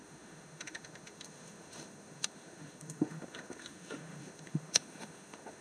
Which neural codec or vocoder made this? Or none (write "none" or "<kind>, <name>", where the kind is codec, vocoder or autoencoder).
autoencoder, DAC-VAE